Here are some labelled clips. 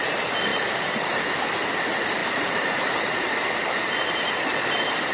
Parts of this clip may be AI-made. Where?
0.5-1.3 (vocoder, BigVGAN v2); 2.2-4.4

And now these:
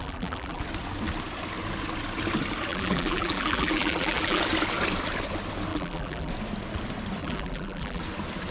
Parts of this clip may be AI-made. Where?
0.0-0.6 (vocoder, BigVGAN v2); 2.7-4.4; 5.7-6.3; 7.2-8.0

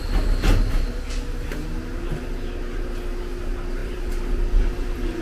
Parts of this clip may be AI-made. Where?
3.8-5.2 (vocoder, BigVGAN v2)